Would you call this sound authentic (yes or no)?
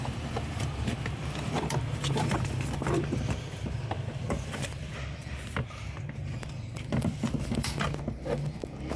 no